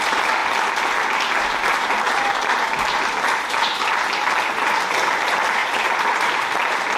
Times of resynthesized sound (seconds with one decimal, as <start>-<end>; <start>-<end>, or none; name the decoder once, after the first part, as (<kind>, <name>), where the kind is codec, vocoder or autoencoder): 5.6-6.3 (vocoder, BigVGAN v2)